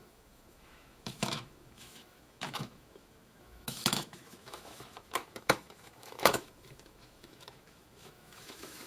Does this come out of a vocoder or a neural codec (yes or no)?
yes